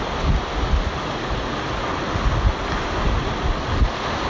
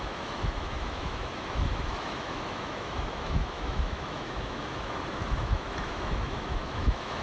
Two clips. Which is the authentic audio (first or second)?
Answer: first